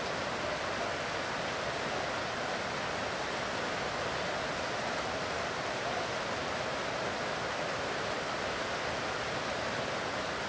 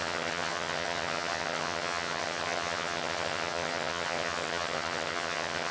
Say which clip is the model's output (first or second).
second